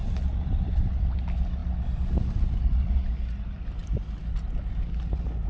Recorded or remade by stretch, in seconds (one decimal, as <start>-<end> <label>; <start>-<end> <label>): 0.0-5.5 recorded